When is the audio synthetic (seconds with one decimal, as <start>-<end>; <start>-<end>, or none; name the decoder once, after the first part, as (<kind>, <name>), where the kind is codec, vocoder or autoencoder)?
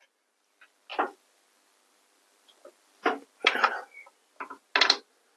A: none